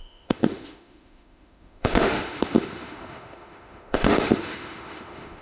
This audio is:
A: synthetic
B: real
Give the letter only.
A